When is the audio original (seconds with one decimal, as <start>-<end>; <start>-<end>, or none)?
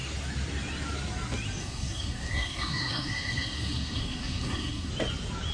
0.0-1.6; 4.9-5.5